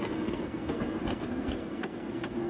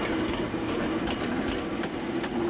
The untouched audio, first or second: second